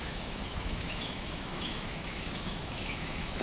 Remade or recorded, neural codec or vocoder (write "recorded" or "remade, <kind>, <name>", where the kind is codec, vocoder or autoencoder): remade, autoencoder, DAC-VAE